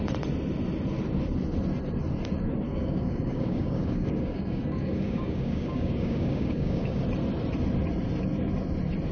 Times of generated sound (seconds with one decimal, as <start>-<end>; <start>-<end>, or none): 2.7-7.0